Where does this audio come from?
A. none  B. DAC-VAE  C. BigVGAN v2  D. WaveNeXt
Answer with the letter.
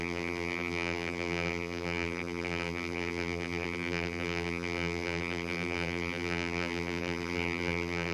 C